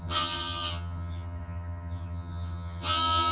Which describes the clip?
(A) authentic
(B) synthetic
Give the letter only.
B